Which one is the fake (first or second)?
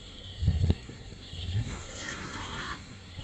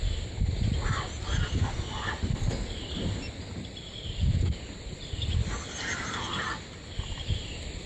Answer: first